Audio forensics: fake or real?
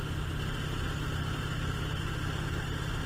real